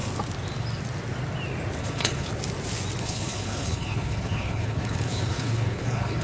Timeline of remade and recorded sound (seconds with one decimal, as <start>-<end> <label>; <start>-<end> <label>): 0.0-1.8 recorded; 1.8-2.3 remade; 2.3-3.0 recorded; 3.0-6.2 remade